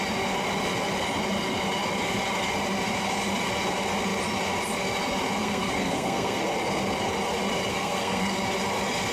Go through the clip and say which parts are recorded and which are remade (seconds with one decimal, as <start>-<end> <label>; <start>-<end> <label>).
0.0-5.4 recorded; 5.4-6.4 remade; 6.4-7.7 recorded; 7.7-8.3 remade; 8.3-9.1 recorded

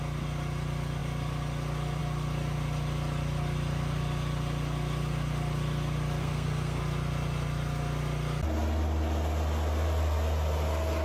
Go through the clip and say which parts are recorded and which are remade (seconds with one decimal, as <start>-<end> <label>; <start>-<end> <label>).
0.0-6.2 recorded; 6.2-6.8 remade; 6.8-11.0 recorded

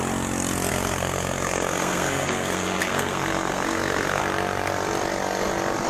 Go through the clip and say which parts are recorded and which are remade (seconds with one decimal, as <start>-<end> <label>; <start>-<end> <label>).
0.0-0.7 recorded; 0.7-4.2 remade; 4.2-5.9 recorded

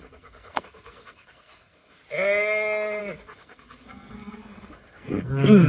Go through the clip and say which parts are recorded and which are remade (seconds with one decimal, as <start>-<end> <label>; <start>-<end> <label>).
0.0-2.0 remade; 2.0-3.0 recorded; 3.0-5.7 remade

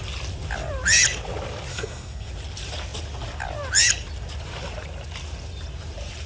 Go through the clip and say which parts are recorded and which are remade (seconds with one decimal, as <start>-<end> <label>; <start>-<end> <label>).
0.0-1.7 recorded; 1.7-2.3 remade; 2.3-6.3 recorded

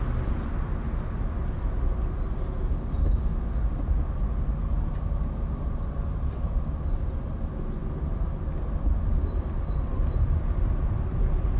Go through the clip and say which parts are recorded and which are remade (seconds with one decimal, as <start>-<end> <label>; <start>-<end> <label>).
0.0-11.6 recorded

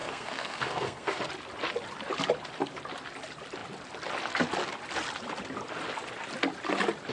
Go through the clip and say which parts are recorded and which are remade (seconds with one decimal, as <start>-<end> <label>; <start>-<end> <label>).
0.0-1.2 remade; 1.2-7.1 recorded

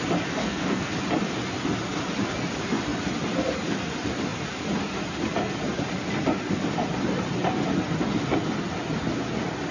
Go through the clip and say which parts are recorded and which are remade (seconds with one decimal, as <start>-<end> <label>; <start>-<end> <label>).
0.0-0.4 recorded; 0.4-0.9 remade; 0.9-9.7 recorded